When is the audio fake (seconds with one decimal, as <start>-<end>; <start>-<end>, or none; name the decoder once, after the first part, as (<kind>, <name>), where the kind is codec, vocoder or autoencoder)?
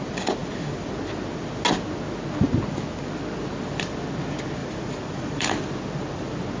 0.4-0.9 (vocoder, BigVGAN v2); 4.6-5.6